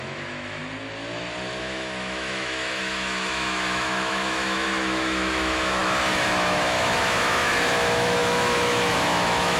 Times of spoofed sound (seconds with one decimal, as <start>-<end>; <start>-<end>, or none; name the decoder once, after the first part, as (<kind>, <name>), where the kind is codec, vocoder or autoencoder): 0.0-0.6 (autoencoder, DAC-VAE); 1.6-9.6

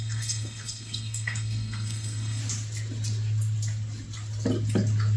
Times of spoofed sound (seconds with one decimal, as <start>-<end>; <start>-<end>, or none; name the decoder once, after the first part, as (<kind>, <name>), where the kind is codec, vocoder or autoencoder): 0.0-2.4 (codec, SNAC)

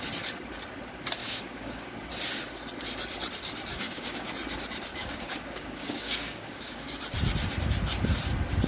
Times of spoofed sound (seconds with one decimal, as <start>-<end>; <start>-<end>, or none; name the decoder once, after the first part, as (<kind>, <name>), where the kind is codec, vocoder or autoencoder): 1.2-2.1 (codec, DAC); 3.7-4.3; 4.9-7.0

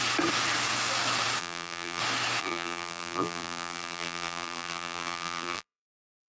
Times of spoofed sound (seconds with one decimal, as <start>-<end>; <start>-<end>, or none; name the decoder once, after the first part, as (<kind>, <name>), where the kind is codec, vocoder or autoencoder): 1.4-2.0 (vocoder, BigVGAN v2); 2.4-6.3